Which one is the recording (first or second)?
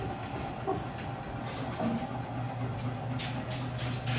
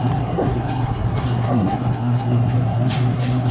first